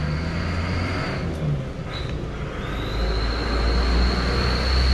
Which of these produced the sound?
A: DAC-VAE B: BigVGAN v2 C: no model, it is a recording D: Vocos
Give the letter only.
C